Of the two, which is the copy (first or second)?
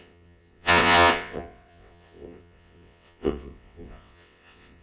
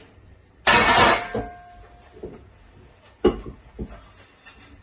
first